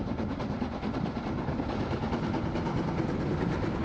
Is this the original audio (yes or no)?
yes